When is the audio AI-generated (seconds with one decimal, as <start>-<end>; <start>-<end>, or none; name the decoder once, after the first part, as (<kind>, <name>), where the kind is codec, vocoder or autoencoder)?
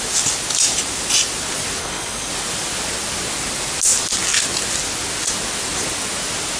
1.8-2.3 (codec, SNAC)